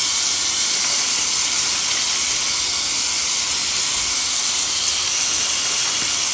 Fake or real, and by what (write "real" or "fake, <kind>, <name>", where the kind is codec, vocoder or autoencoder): real